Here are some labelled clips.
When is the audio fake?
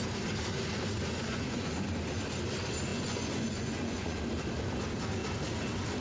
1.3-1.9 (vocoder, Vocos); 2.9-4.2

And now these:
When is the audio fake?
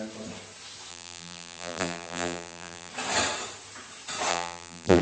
0.9-2.9 (vocoder, BigVGAN v2); 4.3-5.0